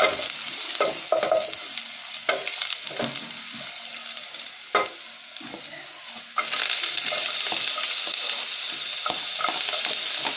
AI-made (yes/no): no